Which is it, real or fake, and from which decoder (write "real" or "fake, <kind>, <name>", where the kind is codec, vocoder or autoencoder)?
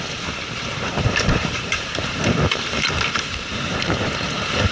fake, vocoder, BigVGAN v2